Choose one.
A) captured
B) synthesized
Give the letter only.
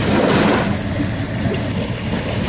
A